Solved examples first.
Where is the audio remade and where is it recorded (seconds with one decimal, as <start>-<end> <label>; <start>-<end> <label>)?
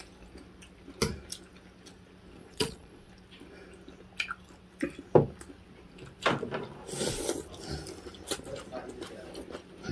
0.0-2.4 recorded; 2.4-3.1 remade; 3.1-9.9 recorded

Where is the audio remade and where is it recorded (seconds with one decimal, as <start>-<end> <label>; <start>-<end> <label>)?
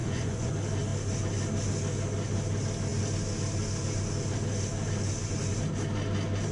0.0-0.5 remade; 0.5-6.5 recorded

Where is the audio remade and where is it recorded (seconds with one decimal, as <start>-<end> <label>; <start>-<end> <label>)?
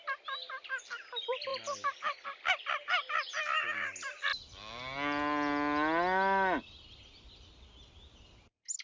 0.0-8.8 recorded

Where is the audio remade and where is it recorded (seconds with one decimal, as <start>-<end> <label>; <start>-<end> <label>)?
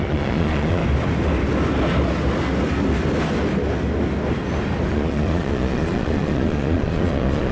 0.0-0.8 remade; 0.8-4.9 recorded; 4.9-7.5 remade